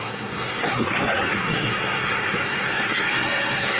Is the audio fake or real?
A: fake